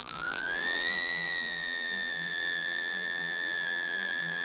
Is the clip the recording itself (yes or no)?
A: no